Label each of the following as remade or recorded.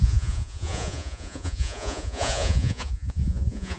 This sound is remade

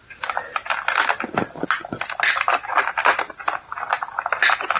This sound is recorded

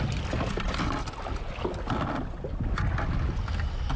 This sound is recorded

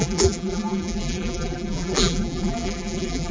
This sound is remade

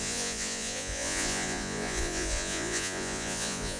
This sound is remade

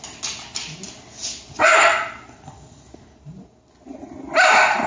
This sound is recorded